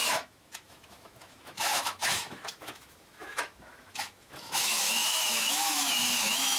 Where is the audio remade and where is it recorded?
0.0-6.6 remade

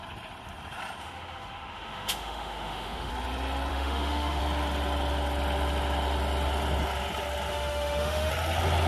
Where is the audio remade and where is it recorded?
0.0-1.0 recorded; 1.0-3.1 remade; 3.1-3.7 recorded; 3.7-4.4 remade; 4.4-7.5 recorded; 7.5-8.3 remade; 8.3-8.9 recorded

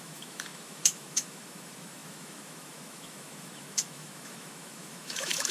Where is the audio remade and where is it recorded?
0.0-5.5 remade

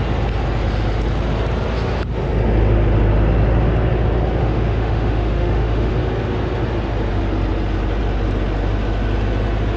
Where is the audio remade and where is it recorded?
0.0-4.4 recorded; 4.4-5.9 remade; 5.9-9.8 recorded

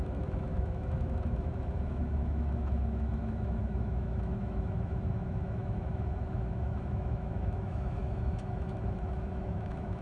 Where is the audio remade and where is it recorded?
0.0-10.0 remade